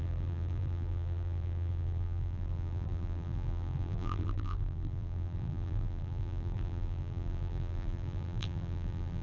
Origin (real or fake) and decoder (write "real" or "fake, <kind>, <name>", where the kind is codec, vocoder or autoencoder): fake, vocoder, BigVGAN v2